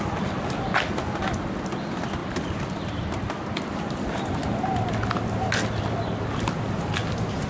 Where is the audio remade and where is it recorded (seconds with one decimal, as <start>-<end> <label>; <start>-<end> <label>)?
0.0-7.5 recorded